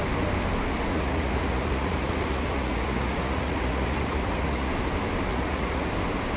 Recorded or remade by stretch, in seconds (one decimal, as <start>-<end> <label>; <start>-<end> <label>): 0.0-0.9 recorded; 0.9-4.7 remade; 4.7-5.3 recorded; 5.3-5.9 remade; 5.9-6.4 recorded